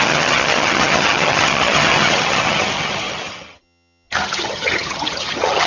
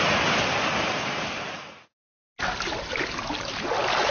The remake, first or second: first